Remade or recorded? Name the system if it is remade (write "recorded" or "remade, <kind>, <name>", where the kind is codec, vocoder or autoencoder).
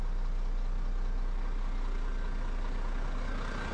recorded